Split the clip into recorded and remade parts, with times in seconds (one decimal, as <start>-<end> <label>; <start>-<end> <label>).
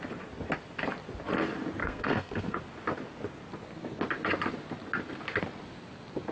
0.0-1.8 recorded; 1.8-2.6 remade; 2.6-6.3 recorded